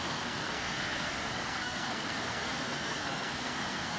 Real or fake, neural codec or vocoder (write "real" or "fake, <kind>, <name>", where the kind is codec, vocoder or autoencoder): fake, codec, SNAC